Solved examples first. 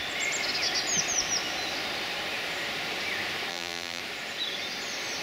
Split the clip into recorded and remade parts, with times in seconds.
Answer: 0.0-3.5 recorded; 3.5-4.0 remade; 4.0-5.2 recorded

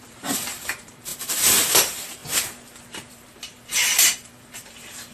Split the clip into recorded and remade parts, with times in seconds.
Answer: 0.0-2.2 remade; 2.2-3.1 recorded; 3.1-5.1 remade

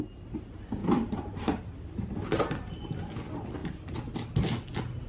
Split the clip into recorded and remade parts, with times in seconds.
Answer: 0.0-0.8 recorded; 0.8-3.0 remade; 3.0-5.1 recorded

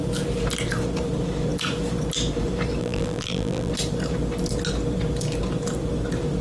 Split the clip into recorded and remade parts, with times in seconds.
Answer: 0.0-2.8 recorded; 2.8-3.7 remade; 3.7-6.4 recorded

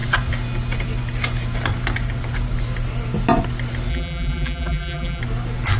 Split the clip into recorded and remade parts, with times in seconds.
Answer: 0.0-3.9 recorded; 3.9-5.2 remade; 5.2-5.8 recorded

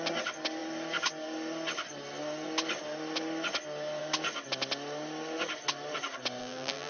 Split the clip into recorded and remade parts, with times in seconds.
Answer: 0.0-6.4 recorded; 6.4-6.9 remade

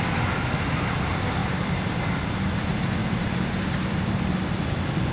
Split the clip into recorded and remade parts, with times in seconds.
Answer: 0.0-1.4 recorded; 1.4-2.1 remade; 2.1-3.0 recorded; 3.0-3.9 remade; 3.9-5.1 recorded

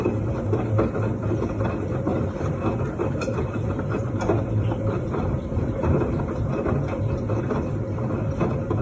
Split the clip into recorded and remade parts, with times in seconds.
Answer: 0.0-2.1 recorded; 2.1-6.2 remade; 6.2-8.8 recorded